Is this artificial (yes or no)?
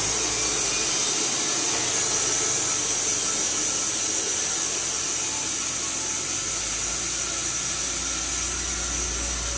no